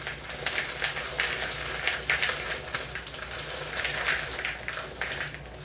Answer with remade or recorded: recorded